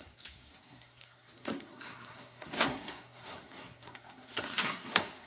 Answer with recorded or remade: remade